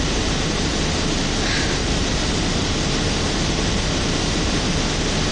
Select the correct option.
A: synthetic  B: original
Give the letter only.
A